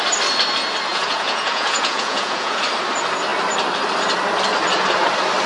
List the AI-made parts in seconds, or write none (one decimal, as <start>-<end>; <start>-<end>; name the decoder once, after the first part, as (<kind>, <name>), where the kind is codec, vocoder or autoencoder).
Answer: 0.9-2.6 (vocoder, Vocos)